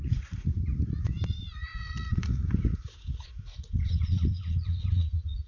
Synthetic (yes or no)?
yes